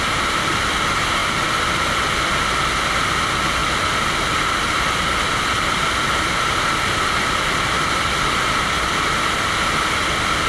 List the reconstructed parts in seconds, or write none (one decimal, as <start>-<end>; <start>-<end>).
none